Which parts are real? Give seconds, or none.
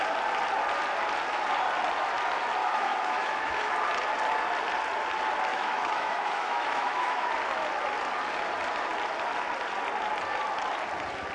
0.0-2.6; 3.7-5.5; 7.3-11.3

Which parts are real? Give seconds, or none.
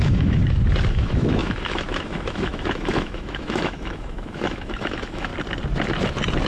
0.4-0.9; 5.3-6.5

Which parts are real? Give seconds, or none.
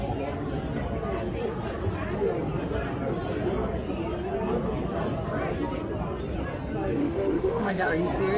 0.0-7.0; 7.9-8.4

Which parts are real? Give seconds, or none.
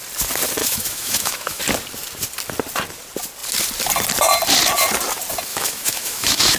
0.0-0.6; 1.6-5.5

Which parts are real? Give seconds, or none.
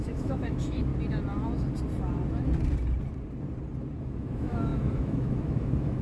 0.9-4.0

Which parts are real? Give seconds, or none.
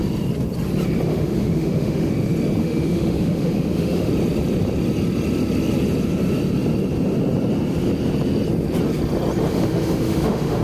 0.0-1.1; 2.1-2.6; 4.1-9.5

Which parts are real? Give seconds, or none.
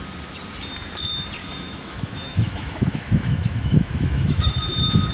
0.0-1.4; 4.5-5.1